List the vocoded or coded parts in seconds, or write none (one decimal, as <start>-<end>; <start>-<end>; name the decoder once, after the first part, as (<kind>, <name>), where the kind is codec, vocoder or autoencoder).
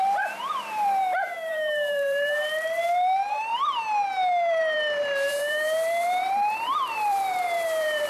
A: 0.0-3.5 (vocoder, BigVGAN v2); 4.5-8.1